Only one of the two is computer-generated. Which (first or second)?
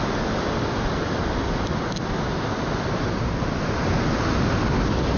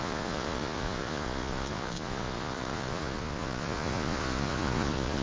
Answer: second